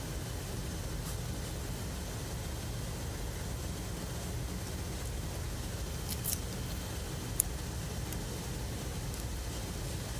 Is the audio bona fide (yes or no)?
yes